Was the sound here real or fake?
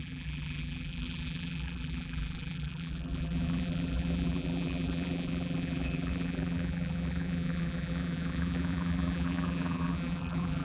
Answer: fake